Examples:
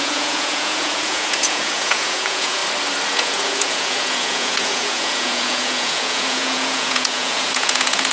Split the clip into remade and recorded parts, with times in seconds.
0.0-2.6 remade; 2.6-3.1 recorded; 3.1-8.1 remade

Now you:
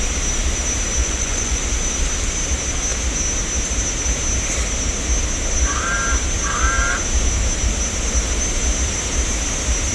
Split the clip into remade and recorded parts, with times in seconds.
0.0-1.0 recorded; 1.0-1.6 remade; 1.6-9.9 recorded